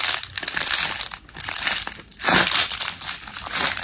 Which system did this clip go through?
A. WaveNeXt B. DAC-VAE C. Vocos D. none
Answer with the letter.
D